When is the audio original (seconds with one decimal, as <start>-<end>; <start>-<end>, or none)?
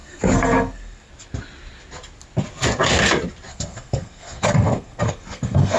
1.1-3.5